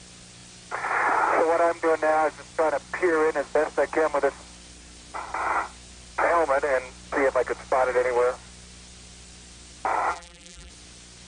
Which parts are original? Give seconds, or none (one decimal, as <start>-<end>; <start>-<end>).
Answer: 0.0-10.1; 10.7-11.3